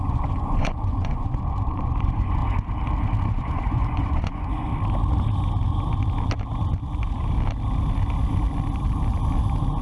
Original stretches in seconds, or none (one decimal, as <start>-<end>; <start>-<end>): 2.4-3.3; 4.7-9.8